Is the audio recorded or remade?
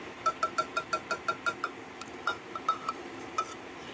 remade